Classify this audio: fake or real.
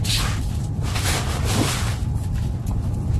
real